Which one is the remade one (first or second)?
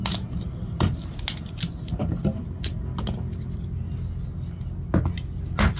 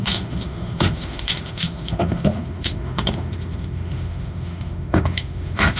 second